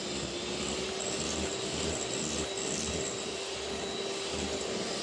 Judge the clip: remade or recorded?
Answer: recorded